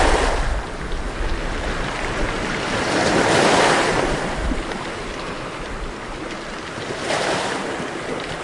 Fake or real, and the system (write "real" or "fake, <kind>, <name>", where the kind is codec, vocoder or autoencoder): real